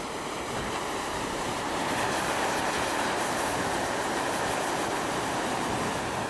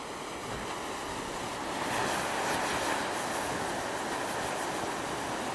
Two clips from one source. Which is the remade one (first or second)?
first